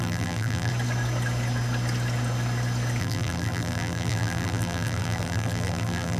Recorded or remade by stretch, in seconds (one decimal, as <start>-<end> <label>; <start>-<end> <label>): 0.0-0.7 remade; 0.7-3.0 recorded; 3.0-6.2 remade